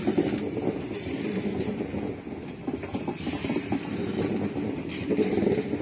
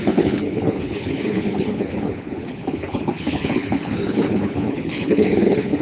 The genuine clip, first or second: first